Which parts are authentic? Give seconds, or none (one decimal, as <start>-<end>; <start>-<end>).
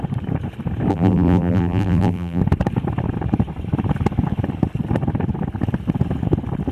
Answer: 0.0-0.9; 2.4-6.7